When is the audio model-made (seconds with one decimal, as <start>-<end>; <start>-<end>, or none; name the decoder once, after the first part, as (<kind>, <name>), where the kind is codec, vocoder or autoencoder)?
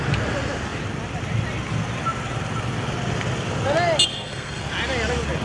4.1-4.6 (codec, SNAC)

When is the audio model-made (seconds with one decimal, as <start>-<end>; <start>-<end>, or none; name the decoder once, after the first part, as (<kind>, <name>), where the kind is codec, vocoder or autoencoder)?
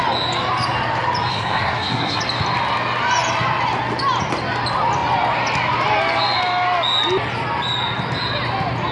1.3-2.2 (codec, SNAC)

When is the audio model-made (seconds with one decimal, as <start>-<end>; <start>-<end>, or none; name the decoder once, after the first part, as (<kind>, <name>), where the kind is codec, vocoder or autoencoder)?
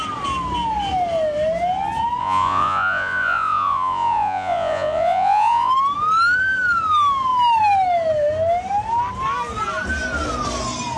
2.2-5.7 (vocoder, Vocos)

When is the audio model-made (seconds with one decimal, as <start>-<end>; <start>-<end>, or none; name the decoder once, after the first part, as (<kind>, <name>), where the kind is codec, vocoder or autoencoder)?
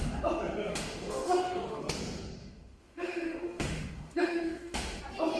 0.7-1.8 (autoencoder, DAC-VAE); 2.4-5.0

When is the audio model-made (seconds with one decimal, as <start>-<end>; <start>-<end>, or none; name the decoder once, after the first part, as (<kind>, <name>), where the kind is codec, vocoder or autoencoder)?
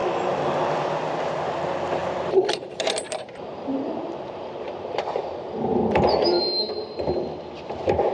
2.0-5.2 (vocoder, BigVGAN v2)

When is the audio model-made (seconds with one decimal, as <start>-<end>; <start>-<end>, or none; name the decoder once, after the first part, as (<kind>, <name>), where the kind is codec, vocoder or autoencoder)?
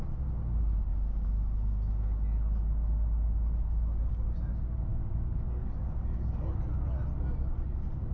none